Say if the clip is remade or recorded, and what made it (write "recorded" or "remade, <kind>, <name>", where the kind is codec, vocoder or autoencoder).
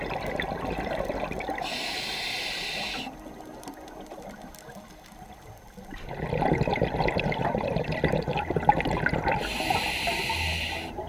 recorded